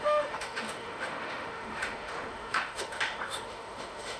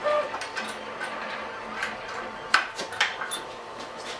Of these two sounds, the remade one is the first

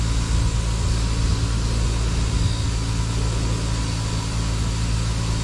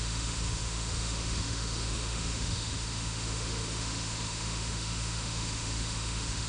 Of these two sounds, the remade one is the second